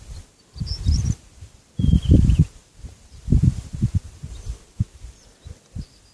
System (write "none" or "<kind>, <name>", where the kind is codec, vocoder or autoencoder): none